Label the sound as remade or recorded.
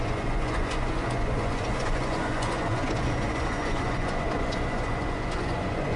remade